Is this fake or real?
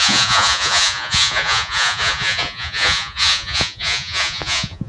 fake